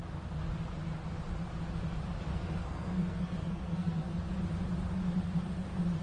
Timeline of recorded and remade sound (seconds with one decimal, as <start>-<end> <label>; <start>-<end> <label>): 0.0-2.3 recorded; 2.3-4.2 remade; 4.2-6.0 recorded